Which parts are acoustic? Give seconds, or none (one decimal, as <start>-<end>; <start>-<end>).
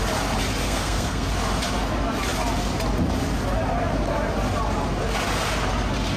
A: 0.0-0.6; 1.3-6.2